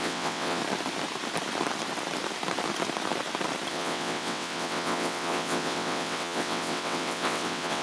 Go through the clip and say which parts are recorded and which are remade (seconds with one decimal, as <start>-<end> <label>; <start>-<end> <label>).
0.0-0.6 remade; 0.6-3.7 recorded; 3.7-7.8 remade